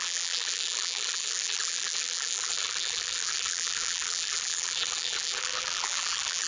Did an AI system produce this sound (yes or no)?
yes